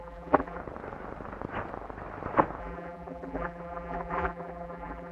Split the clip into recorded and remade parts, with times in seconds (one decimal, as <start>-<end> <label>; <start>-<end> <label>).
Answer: 0.0-0.6 remade; 0.6-2.6 recorded; 2.6-5.1 remade